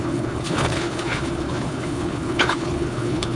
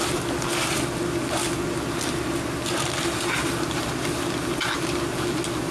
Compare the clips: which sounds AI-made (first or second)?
first